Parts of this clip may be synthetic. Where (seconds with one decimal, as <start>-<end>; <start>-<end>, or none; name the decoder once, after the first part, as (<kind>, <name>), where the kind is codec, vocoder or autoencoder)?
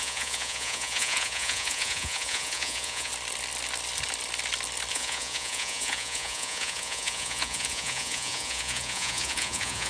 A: 0.0-3.1 (vocoder, Vocos); 4.9-9.9